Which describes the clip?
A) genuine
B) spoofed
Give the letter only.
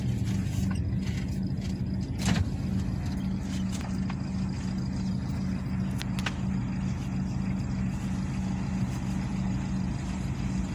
A